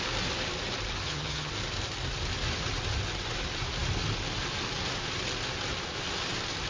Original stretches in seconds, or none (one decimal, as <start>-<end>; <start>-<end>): 0.0-1.0; 1.5-6.7